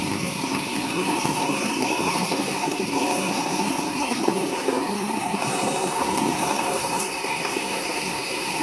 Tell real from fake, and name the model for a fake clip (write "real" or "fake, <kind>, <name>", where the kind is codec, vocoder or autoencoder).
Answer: fake, codec, SNAC